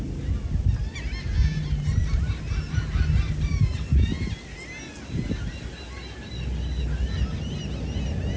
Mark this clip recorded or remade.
recorded